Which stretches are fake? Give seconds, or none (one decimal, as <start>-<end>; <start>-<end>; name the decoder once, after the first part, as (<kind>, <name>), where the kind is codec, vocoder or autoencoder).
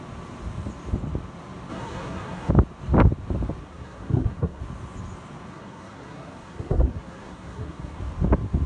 1.7-2.5 (codec, SNAC); 3.6-4.6; 5.5-8.0